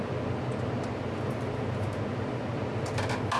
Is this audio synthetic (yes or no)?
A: no